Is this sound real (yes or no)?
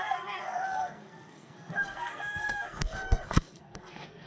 no